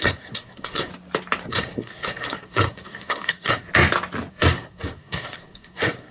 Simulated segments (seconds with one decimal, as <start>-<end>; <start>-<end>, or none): 0.0-0.9; 1.5-3.7; 4.3-6.1

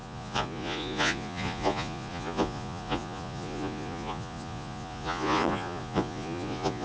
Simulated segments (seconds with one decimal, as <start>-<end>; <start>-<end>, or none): 0.0-6.8

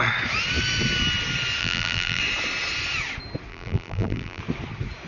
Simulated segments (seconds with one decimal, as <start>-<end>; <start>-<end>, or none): 1.6-2.2; 3.5-4.4

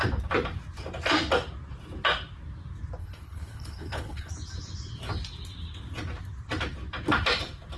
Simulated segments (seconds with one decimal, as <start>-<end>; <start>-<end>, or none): 3.0-4.3